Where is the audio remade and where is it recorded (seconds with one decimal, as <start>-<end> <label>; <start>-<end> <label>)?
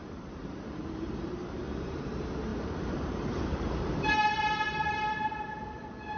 0.0-2.1 remade; 2.1-2.5 recorded; 2.5-4.1 remade; 4.1-6.2 recorded